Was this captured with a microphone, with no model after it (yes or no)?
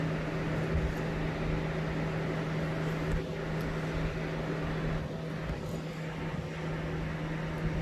yes